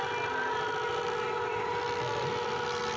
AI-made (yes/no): no